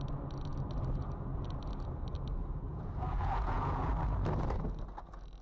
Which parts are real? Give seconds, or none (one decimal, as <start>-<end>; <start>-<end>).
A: 0.0-2.7; 3.9-5.4